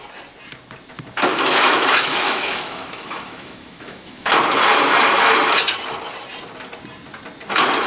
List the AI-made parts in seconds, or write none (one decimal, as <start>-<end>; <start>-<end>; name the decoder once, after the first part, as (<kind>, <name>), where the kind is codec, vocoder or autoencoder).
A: 1.3-4.3 (autoencoder, DAC-VAE)